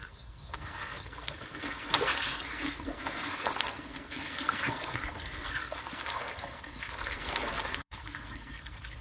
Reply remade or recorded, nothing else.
remade